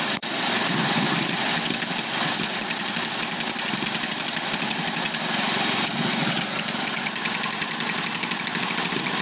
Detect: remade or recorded recorded